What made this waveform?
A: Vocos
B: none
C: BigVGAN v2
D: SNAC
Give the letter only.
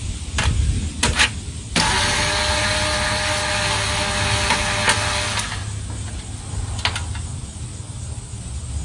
B